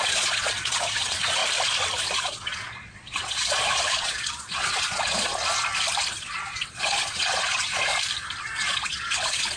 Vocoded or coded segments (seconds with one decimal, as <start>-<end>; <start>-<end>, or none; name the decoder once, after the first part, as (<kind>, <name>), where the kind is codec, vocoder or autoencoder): 0.0-1.4 (vocoder, Vocos); 2.0-5.3; 6.1-7.9; 8.4-9.6